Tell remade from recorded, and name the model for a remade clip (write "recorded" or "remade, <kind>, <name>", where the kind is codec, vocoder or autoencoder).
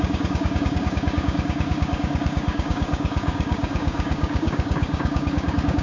remade, codec, DAC